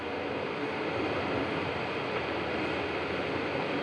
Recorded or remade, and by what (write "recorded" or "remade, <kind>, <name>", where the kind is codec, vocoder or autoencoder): recorded